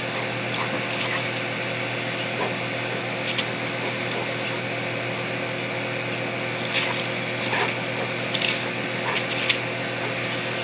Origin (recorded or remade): recorded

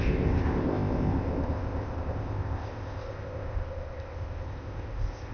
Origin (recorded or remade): remade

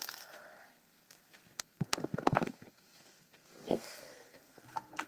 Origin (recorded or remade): remade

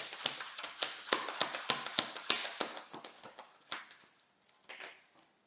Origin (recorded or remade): recorded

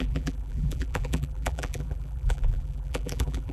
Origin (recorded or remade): remade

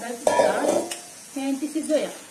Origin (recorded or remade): remade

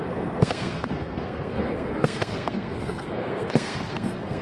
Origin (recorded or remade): remade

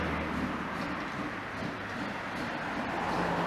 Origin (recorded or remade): recorded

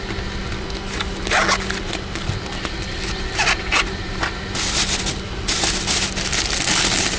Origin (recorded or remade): recorded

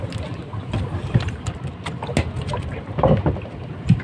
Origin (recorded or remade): recorded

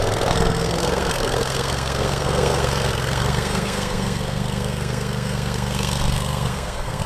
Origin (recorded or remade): remade